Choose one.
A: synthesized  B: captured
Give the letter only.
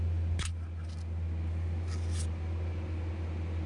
B